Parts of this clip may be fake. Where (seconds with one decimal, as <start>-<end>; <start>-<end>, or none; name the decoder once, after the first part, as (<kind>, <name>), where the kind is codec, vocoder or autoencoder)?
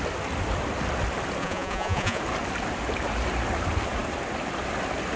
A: 1.4-2.2 (vocoder, Vocos)